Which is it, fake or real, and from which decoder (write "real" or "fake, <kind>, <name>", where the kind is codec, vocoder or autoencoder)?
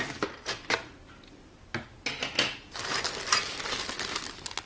real